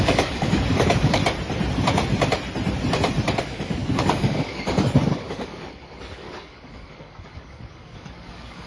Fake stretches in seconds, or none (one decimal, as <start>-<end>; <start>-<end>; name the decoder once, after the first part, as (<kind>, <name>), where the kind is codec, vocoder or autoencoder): 0.0-1.2 (codec, DAC); 3.4-8.7